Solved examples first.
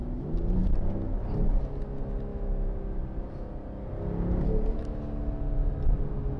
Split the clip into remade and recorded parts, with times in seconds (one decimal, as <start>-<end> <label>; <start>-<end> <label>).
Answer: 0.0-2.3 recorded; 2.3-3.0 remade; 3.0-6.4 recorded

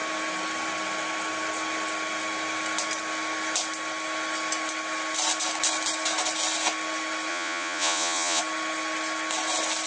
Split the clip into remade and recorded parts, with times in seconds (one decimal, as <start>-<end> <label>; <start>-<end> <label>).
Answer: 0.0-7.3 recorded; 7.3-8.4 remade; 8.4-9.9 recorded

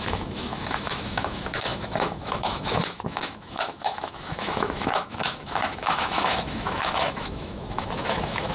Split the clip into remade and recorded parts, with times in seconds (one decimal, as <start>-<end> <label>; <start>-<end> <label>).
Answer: 0.0-8.5 remade

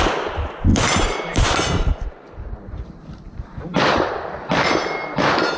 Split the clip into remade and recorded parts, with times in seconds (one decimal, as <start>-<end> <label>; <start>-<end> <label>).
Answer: 0.0-0.7 recorded; 0.7-4.1 remade; 4.1-5.6 recorded